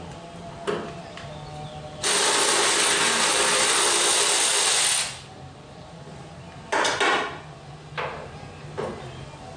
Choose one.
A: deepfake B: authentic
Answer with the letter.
B